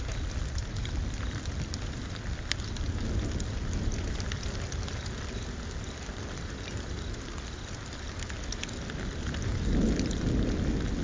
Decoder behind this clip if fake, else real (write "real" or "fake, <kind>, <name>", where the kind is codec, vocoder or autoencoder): real